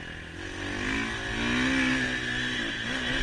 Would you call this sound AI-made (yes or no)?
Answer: no